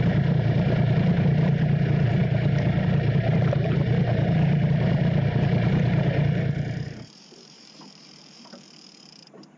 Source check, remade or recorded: remade